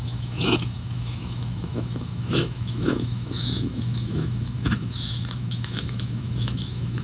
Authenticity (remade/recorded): remade